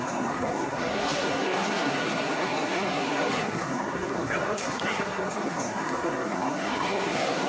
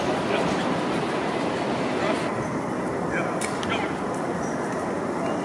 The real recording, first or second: second